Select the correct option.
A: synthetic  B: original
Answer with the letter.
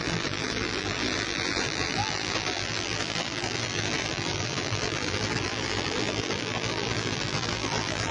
A